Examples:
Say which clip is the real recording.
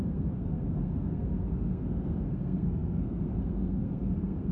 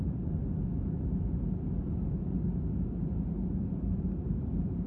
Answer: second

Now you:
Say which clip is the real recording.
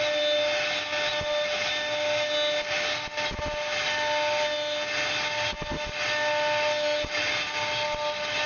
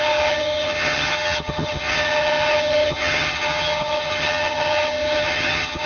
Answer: first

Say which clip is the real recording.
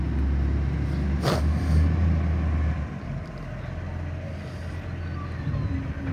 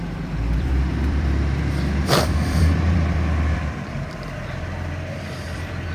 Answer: first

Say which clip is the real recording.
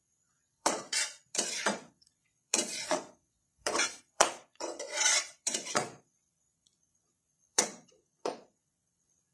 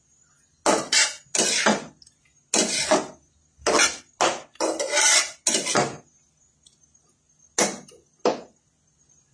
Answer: second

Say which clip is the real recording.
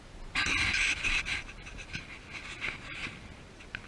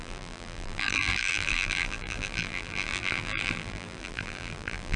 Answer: first